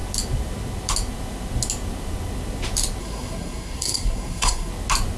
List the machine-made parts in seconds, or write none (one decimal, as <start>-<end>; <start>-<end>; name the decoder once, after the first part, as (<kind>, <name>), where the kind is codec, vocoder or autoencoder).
3.0-4.7 (codec, SNAC)